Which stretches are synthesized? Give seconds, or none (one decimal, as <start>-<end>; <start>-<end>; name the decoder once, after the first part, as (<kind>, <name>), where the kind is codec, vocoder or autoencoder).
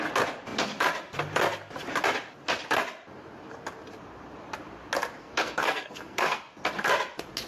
5.2-6.6 (codec, SNAC)